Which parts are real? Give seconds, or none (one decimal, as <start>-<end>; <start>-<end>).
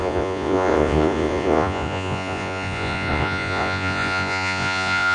none